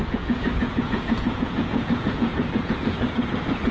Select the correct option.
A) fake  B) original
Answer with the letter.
A